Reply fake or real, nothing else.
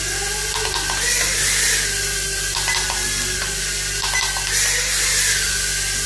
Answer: real